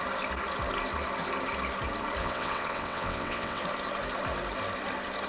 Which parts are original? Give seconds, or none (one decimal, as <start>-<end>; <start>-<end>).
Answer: 0.0-2.2; 3.6-5.3